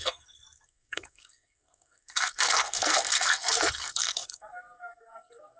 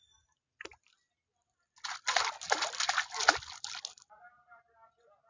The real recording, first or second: second